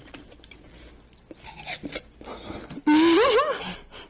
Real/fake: real